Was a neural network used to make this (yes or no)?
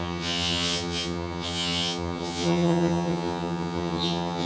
yes